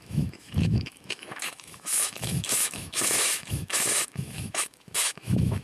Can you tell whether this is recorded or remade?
remade